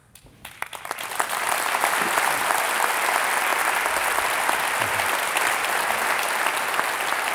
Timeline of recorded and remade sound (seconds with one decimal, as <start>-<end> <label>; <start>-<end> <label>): 0.0-2.9 remade; 2.9-7.3 recorded